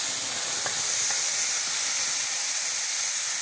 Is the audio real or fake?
real